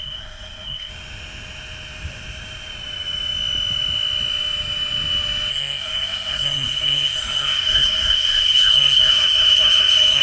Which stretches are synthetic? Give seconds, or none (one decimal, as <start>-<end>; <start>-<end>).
0.0-0.9; 5.5-10.2